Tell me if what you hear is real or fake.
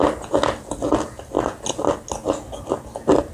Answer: real